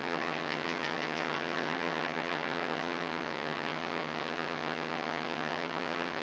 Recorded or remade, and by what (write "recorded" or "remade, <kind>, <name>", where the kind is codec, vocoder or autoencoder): remade, vocoder, HiFi-GAN